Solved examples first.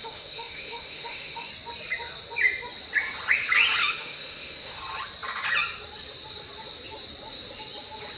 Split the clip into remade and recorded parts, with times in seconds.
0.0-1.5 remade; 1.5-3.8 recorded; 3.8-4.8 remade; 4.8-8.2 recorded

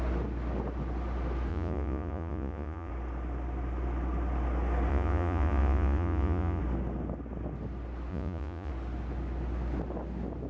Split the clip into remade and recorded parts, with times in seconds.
0.0-1.5 recorded; 1.5-2.9 remade; 2.9-4.9 recorded; 4.9-6.6 remade; 6.6-8.1 recorded; 8.1-8.7 remade; 8.7-10.5 recorded

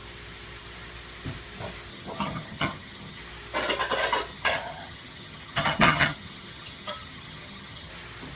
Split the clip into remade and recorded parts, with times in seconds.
0.0-1.9 recorded; 1.9-3.2 remade; 3.2-4.3 recorded; 4.3-7.9 remade; 7.9-8.4 recorded

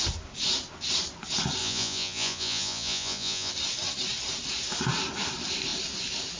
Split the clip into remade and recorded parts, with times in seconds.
0.0-1.6 recorded; 1.6-3.5 remade; 3.5-6.4 recorded

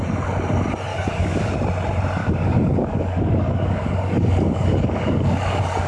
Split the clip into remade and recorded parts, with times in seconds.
0.0-0.9 recorded; 0.9-1.5 remade; 1.5-2.2 recorded; 2.2-5.9 remade

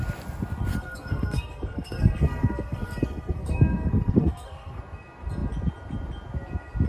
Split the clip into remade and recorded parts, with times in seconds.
0.0-0.7 recorded; 0.7-4.8 remade; 4.8-6.9 recorded

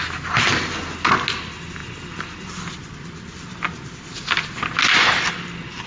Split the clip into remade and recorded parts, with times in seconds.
0.0-5.9 recorded

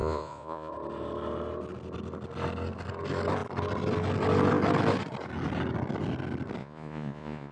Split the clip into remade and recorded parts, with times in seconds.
0.0-0.7 remade; 0.7-6.6 recorded; 6.6-7.5 remade